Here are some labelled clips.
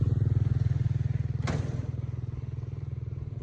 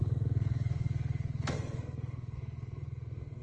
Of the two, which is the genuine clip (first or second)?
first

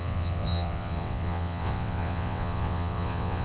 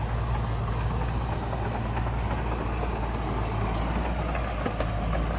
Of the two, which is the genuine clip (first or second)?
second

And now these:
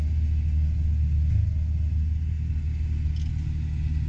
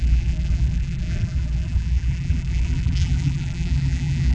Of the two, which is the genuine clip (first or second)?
first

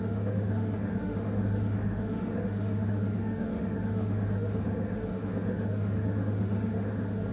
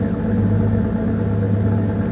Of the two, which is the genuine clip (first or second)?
second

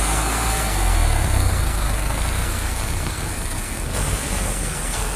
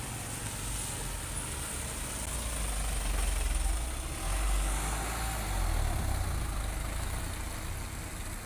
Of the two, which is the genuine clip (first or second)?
second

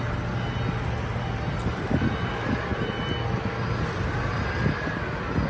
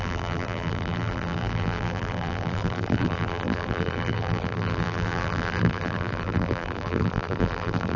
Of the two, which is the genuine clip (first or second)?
first